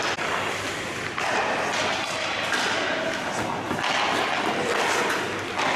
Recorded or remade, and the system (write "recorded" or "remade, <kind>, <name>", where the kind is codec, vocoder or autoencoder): recorded